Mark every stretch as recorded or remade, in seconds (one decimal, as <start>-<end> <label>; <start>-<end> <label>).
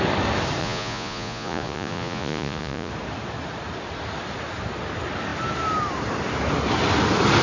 0.0-0.6 recorded; 0.6-2.9 remade; 2.9-7.4 recorded